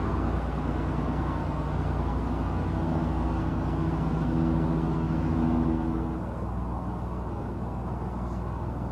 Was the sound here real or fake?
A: fake